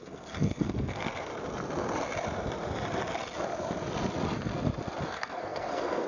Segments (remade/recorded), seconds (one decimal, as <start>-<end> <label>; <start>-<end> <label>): 0.0-1.3 remade; 1.3-5.0 recorded; 5.0-6.1 remade